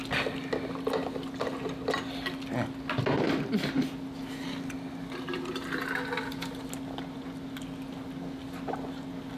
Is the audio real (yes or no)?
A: yes